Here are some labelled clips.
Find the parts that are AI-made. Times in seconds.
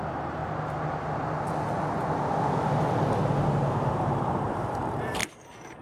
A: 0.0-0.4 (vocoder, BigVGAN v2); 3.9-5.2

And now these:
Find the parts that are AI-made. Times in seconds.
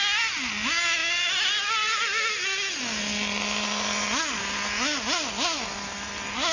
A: none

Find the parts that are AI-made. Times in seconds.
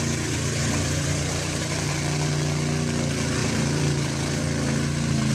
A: 0.6-1.9 (vocoder, BigVGAN v2); 3.4-4.4